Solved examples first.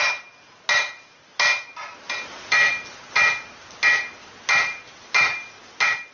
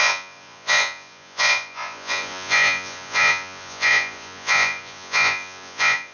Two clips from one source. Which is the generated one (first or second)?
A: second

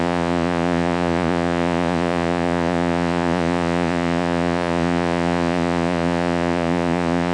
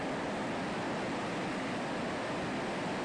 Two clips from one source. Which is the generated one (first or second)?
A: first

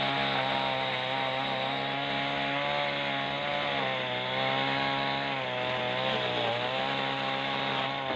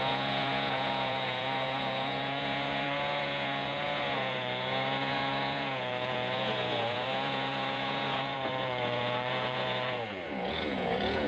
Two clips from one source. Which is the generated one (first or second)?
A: second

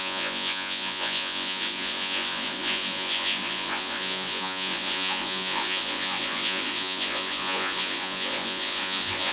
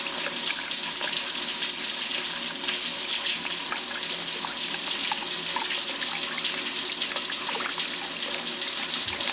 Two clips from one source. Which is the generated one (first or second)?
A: first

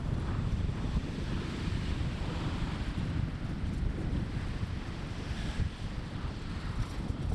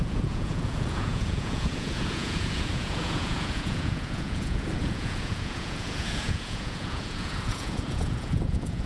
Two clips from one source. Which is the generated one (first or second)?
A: second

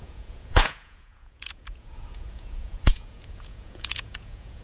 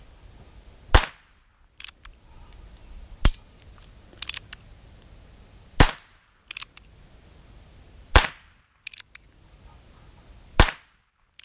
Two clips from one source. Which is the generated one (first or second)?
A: first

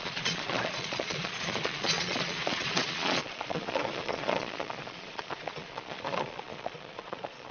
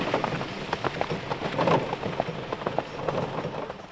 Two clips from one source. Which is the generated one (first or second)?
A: first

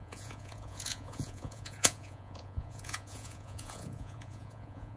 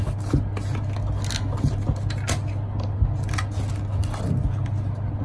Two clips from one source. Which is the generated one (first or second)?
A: first